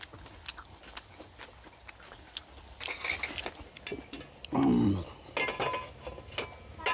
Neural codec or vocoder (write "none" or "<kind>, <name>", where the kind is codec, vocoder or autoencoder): none